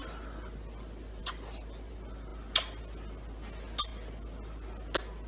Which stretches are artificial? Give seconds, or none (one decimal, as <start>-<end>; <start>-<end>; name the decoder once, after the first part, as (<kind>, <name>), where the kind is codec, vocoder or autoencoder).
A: none